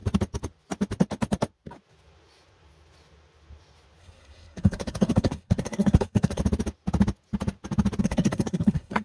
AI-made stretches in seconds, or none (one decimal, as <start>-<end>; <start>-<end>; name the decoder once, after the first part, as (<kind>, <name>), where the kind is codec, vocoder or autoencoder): 4.0-6.4 (codec, SNAC); 8.0-9.0